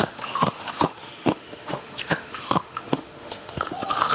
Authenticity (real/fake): fake